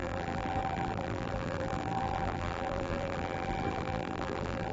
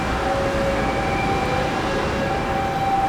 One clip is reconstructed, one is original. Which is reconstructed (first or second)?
first